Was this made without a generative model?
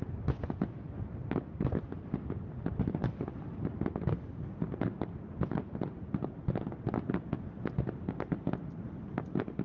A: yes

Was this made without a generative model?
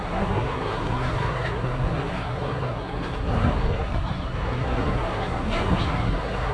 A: no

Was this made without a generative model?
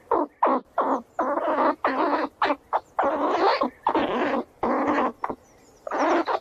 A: yes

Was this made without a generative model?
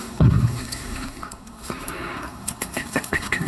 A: no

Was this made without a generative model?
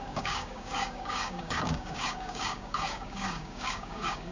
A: no